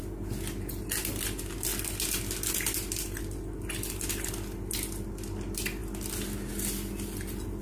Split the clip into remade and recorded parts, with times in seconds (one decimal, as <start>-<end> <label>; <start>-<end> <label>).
0.0-7.6 recorded